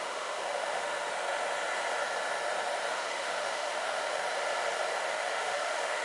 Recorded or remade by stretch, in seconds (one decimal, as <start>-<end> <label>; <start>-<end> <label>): 0.0-1.1 remade; 1.1-2.9 recorded; 2.9-4.2 remade; 4.2-5.1 recorded; 5.1-6.0 remade